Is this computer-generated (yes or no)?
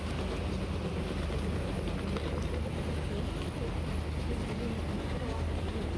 no